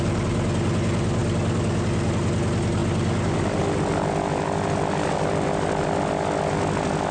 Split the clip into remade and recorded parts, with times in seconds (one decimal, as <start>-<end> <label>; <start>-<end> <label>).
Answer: 0.0-7.1 recorded